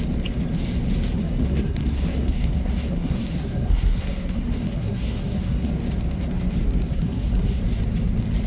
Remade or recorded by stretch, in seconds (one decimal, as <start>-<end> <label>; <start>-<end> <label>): 0.0-1.2 recorded; 1.2-5.7 remade; 5.7-6.9 recorded; 6.9-7.6 remade; 7.6-8.5 recorded